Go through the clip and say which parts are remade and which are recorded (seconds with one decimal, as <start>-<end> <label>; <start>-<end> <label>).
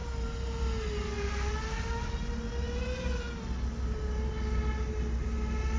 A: 0.0-5.8 recorded